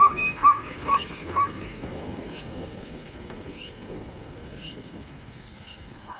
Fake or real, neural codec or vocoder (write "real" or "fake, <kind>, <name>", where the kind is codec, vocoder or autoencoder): fake, codec, SNAC